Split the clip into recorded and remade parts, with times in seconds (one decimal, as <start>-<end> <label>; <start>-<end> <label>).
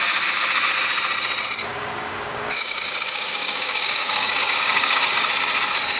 0.0-1.7 recorded; 1.7-5.3 remade; 5.3-6.0 recorded